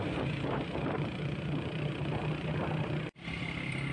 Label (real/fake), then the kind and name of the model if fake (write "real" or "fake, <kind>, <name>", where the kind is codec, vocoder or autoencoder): fake, vocoder, BigVGAN v2